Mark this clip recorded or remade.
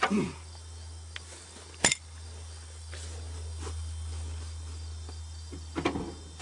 recorded